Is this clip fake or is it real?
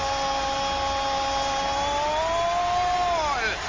real